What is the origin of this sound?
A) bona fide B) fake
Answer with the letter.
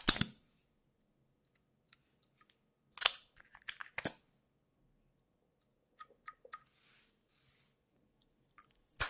A